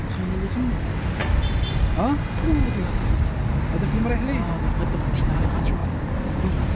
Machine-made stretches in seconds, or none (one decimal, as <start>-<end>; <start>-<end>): none